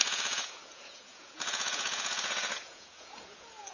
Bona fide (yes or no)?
no